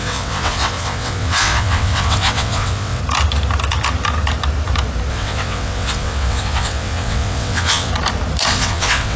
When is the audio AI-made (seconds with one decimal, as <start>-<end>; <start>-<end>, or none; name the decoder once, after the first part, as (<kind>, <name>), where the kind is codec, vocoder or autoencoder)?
0.0-3.0 (vocoder, WaveNeXt); 5.1-7.9; 8.5-9.2